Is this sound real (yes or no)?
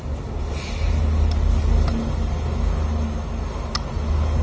yes